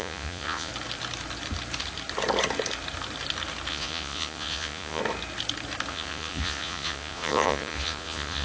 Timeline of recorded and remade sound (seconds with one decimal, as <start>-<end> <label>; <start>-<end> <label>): 0.0-0.7 remade; 0.7-3.7 recorded; 3.7-5.0 remade; 5.0-5.9 recorded; 5.9-8.4 remade